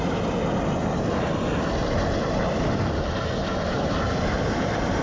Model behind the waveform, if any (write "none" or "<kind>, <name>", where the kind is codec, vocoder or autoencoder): vocoder, BigVGAN v2